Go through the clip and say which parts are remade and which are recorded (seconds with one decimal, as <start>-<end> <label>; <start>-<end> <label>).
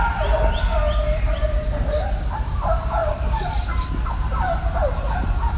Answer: 0.0-5.6 recorded